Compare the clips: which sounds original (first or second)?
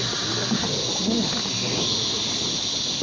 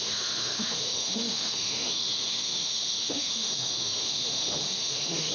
first